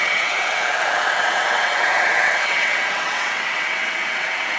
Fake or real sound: fake